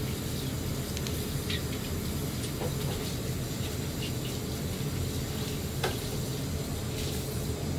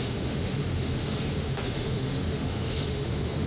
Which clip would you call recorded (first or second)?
first